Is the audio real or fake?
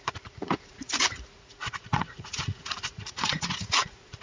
fake